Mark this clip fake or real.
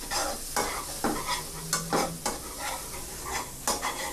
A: real